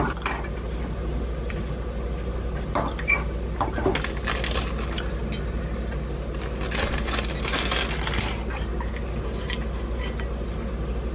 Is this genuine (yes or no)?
yes